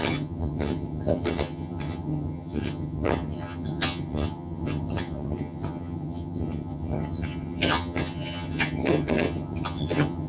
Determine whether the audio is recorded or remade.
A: remade